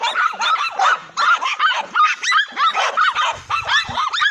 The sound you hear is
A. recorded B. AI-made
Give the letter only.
A